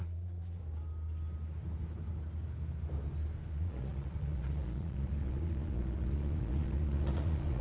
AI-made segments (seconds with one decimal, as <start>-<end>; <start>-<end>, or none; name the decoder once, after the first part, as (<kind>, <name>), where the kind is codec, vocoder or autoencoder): 0.0-0.6 (vocoder, Vocos); 3.5-7.6